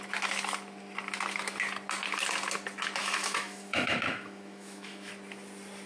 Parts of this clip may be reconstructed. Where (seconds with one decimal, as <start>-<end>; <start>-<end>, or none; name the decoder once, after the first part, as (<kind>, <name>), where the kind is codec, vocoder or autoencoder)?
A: 3.0-5.1 (autoencoder, DAC-VAE)